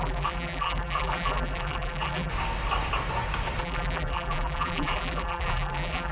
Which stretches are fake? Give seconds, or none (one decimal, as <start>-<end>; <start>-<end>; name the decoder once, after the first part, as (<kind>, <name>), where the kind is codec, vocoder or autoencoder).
0.0-2.3 (vocoder, BigVGAN v2); 3.6-6.1